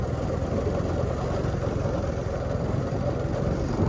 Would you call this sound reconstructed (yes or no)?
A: no